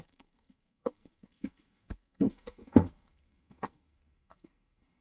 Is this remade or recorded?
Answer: remade